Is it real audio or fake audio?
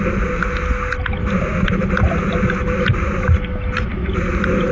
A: real